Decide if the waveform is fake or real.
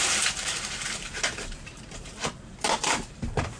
fake